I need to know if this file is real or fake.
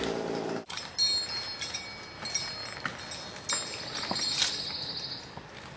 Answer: real